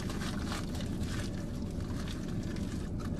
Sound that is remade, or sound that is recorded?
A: recorded